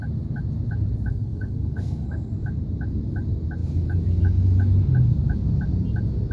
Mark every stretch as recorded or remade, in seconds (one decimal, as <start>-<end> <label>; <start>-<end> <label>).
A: 0.0-1.1 recorded; 1.1-2.3 remade; 2.3-6.3 recorded